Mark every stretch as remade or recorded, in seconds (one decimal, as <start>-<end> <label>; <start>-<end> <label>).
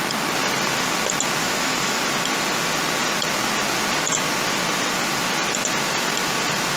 0.0-1.4 recorded; 1.4-2.0 remade; 2.0-6.8 recorded